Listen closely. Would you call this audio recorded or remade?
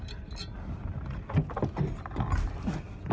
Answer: recorded